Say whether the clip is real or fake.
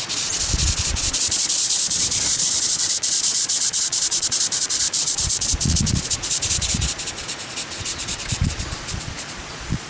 fake